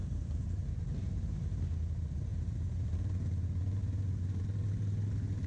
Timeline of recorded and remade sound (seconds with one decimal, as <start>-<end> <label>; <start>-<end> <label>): 0.0-1.2 remade; 1.2-3.8 recorded; 3.8-4.4 remade; 4.4-5.5 recorded